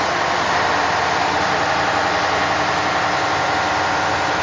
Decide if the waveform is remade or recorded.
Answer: recorded